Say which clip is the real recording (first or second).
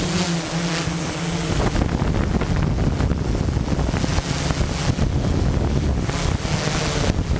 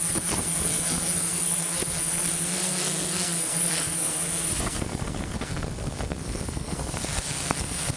first